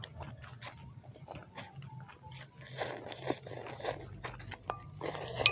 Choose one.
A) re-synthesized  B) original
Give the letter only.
B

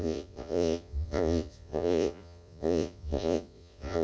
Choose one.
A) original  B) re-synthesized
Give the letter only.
B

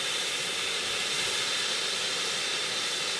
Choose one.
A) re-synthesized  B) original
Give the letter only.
A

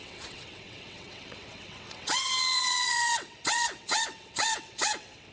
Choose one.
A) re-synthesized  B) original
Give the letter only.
A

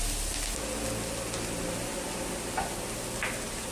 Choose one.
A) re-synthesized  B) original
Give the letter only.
B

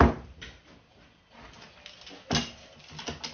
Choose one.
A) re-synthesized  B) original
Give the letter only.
B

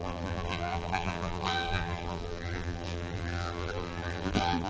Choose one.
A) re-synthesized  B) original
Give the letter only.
A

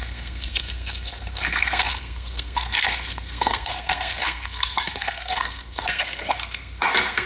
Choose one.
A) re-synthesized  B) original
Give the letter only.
A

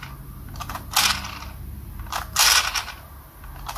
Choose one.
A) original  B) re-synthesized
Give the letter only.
A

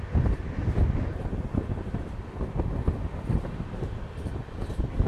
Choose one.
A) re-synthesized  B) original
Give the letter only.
B